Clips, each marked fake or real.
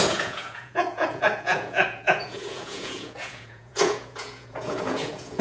fake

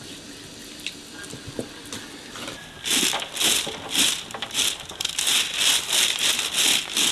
real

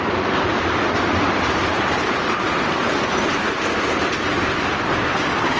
real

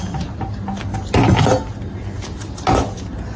real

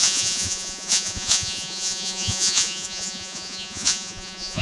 fake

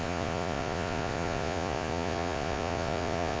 fake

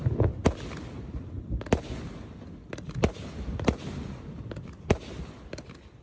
real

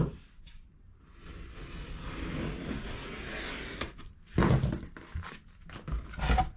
real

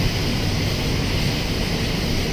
real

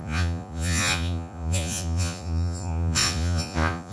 fake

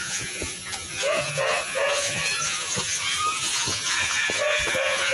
fake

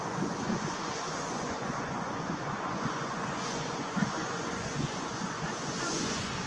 fake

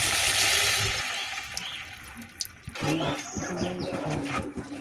real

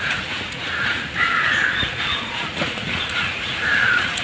fake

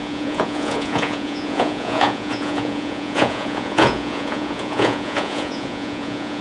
fake